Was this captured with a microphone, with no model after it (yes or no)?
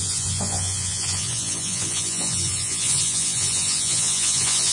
no